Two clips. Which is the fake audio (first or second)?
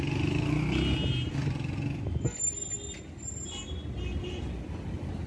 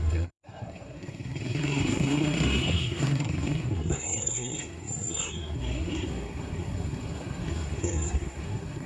second